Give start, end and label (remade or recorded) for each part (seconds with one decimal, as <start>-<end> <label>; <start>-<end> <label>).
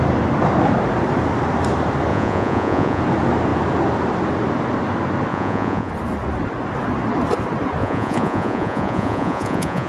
0.0-2.1 recorded; 2.1-3.0 remade; 3.0-5.3 recorded; 5.3-5.9 remade; 5.9-7.8 recorded; 7.8-9.9 remade